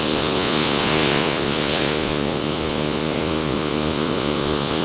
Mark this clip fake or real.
fake